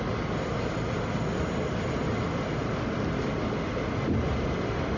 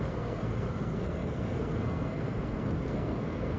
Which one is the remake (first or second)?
second